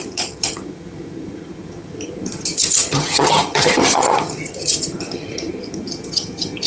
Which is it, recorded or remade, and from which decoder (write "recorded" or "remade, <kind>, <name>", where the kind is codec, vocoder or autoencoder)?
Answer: remade, vocoder, HiFi-GAN